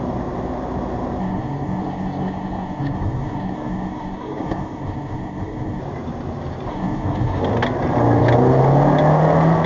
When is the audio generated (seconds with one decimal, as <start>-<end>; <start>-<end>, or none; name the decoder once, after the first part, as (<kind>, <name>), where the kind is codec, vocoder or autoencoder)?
1.2-5.8 (codec, SNAC); 6.7-7.4